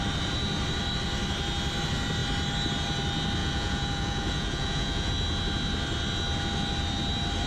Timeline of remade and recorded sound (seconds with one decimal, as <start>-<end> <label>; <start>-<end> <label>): 0.0-3.4 recorded; 3.4-5.1 remade; 5.1-7.5 recorded